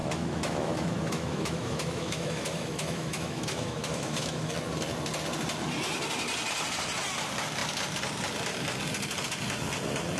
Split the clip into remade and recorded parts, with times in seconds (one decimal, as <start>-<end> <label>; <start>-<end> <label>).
0.0-4.5 remade; 4.5-10.2 recorded